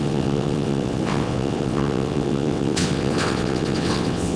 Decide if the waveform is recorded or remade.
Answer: remade